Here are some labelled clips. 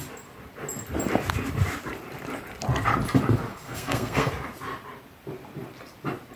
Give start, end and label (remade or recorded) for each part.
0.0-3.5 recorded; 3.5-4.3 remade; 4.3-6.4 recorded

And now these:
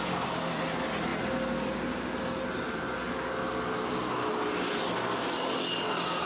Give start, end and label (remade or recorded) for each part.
0.0-6.3 recorded

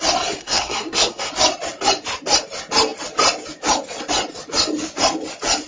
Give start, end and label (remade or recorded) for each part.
0.0-0.4 recorded; 0.4-1.3 remade; 1.3-5.7 recorded